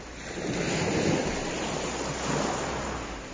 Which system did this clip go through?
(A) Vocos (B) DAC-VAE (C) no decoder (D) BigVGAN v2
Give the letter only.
C